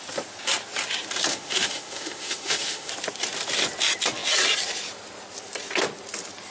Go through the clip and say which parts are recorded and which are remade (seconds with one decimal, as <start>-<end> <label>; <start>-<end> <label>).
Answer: 0.0-1.3 recorded; 1.3-2.9 remade; 2.9-6.5 recorded

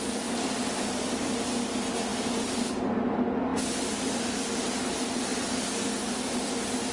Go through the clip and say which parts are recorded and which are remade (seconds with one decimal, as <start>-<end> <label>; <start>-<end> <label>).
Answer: 0.0-6.9 recorded